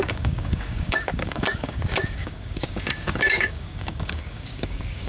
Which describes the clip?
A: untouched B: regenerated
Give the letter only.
B